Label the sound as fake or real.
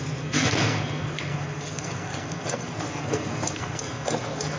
fake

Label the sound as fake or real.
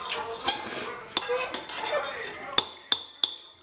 real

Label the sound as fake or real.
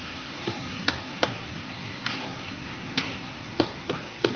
fake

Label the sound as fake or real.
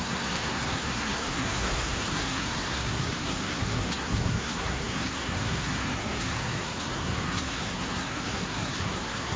fake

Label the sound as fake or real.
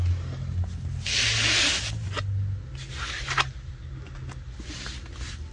real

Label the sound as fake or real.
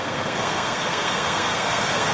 fake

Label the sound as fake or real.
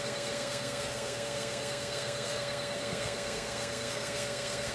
fake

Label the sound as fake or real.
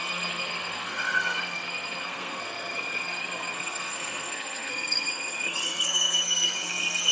fake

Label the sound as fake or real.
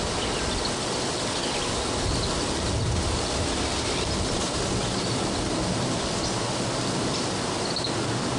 real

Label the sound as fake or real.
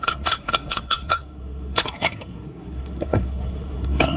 fake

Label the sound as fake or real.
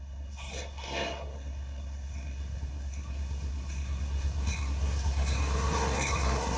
fake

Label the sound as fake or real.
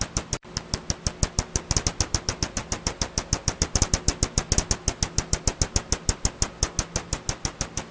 real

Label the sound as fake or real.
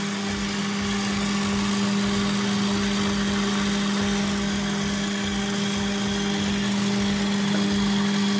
real